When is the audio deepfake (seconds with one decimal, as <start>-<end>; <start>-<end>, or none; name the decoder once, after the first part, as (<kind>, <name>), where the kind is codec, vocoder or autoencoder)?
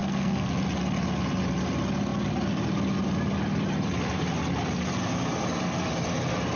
0.0-0.5 (codec, SNAC)